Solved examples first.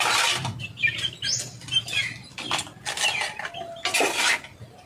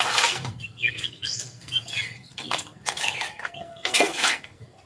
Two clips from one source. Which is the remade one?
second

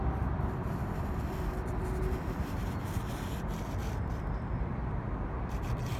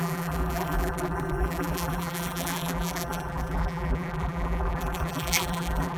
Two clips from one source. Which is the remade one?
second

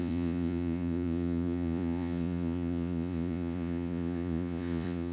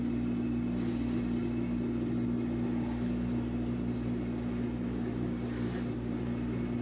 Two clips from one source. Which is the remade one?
first